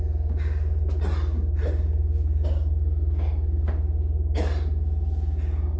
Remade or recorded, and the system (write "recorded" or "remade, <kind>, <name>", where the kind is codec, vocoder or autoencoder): recorded